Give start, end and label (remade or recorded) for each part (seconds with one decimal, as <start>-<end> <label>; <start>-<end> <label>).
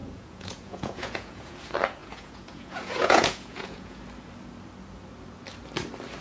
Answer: 0.0-1.6 remade; 1.6-2.0 recorded; 2.0-4.0 remade; 4.0-6.2 recorded